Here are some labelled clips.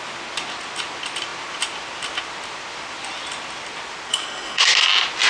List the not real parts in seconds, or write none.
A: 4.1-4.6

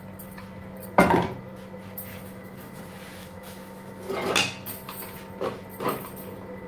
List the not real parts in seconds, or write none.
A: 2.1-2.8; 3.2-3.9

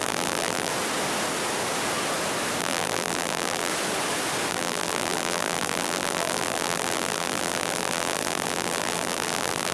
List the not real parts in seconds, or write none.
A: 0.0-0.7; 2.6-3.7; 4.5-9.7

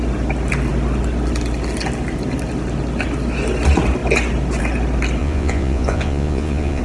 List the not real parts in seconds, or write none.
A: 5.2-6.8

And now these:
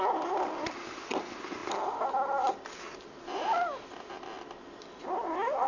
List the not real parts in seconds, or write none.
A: none

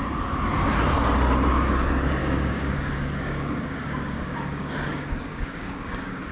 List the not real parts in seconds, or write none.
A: 2.2-6.3

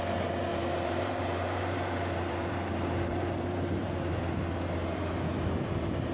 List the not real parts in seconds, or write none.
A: 0.5-4.2